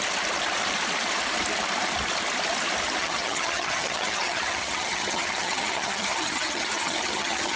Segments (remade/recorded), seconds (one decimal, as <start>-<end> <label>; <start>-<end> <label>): 0.0-3.0 recorded; 3.0-7.6 remade